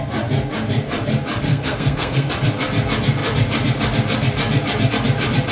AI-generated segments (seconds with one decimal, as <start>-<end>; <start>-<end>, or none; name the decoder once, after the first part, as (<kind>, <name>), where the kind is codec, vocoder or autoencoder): 1.5-2.3 (codec, SNAC)